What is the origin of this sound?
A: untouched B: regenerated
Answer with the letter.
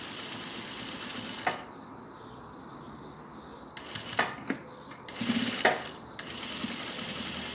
A